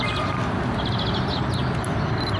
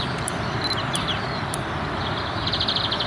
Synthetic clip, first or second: second